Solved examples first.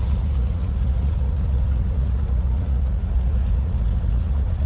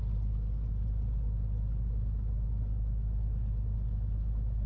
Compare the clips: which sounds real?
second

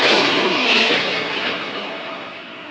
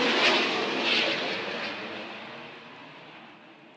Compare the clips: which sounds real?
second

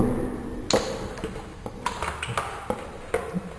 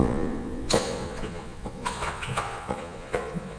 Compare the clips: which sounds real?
first